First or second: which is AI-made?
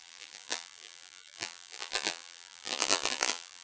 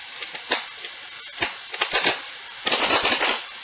first